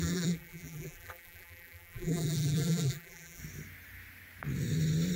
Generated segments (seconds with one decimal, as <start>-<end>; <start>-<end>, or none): 0.0-3.4

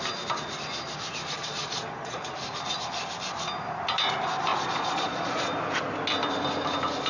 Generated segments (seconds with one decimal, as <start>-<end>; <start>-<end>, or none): 1.3-2.3; 4.5-5.4

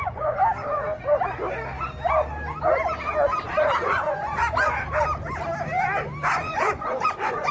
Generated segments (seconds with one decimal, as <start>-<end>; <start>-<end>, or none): 0.0-0.4; 3.8-4.3; 6.4-7.5

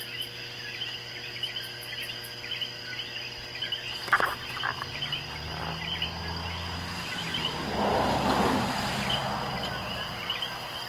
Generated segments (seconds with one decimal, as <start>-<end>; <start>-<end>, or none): none

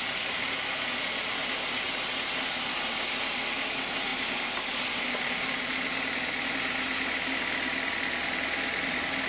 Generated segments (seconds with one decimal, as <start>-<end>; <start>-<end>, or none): none

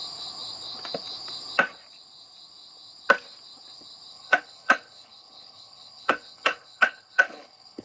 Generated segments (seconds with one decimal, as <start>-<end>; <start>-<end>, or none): 4.1-7.8

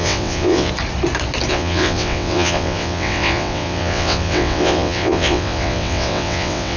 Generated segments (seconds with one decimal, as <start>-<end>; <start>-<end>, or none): 0.0-0.7; 1.5-6.8